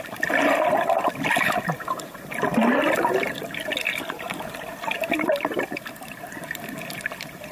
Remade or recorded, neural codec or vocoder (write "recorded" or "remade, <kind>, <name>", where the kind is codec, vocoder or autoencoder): recorded